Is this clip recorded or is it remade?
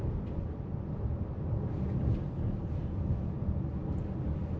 recorded